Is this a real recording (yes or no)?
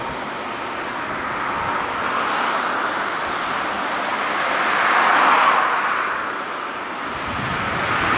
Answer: yes